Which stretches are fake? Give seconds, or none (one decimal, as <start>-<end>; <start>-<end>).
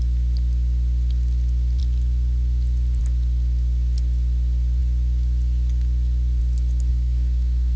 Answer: 6.9-7.8